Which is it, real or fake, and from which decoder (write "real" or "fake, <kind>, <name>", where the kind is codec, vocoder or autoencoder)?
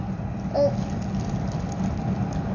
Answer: real